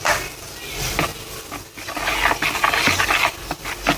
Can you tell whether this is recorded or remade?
recorded